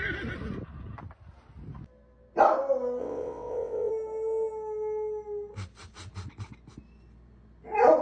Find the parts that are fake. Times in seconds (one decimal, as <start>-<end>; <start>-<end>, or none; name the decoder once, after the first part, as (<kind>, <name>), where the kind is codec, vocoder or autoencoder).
3.0-3.9 (vocoder, WaveNeXt)

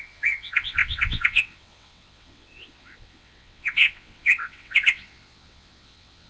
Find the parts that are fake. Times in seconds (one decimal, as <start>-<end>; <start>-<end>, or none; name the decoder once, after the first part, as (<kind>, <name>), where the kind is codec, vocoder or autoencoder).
0.0-6.3 (vocoder, WaveNeXt)

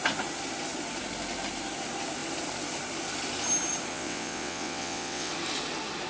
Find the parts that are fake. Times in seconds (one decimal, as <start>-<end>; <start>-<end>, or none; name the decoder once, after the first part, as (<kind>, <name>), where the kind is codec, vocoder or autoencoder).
3.9-5.3 (vocoder, WaveNeXt)

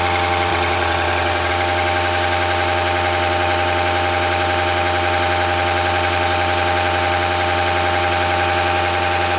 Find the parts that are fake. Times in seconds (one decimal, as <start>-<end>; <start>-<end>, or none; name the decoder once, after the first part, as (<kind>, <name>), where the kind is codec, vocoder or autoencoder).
0.5-1.5 (vocoder, WaveNeXt)